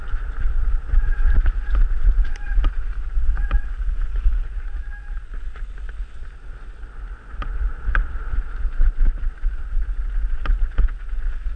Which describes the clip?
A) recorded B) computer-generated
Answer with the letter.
A